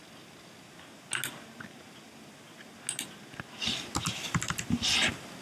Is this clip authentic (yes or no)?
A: yes